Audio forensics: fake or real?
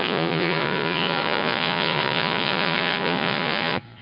fake